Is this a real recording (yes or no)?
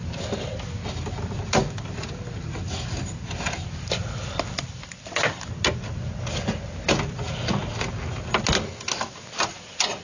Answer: yes